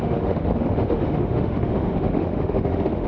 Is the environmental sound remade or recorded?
remade